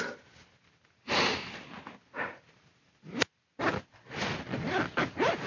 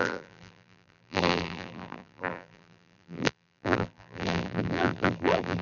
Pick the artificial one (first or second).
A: second